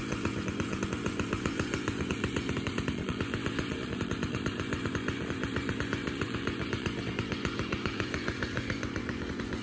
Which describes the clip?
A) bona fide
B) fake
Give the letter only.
B